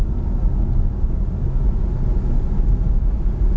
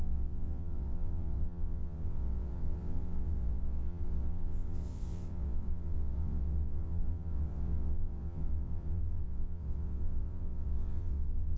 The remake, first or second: second